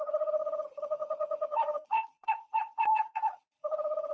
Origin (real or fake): fake